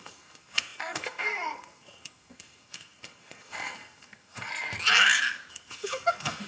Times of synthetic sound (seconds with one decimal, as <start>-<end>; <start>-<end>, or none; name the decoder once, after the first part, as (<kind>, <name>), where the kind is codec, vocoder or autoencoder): 0.0-4.5 (codec, SNAC); 5.5-6.5